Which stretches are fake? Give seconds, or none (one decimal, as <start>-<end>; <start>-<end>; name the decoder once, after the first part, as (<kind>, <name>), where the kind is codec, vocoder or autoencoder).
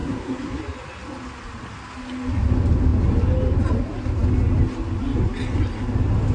0.0-0.6 (codec, SNAC)